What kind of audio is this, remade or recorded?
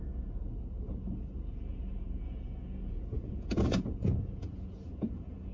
remade